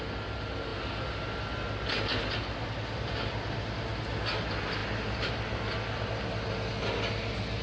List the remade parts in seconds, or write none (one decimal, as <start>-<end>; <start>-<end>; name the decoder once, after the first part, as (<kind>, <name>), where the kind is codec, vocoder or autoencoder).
none